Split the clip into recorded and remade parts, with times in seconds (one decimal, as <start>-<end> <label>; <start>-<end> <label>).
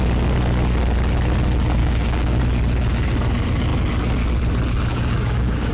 0.0-1.8 recorded; 1.8-2.4 remade; 2.4-4.9 recorded; 4.9-5.7 remade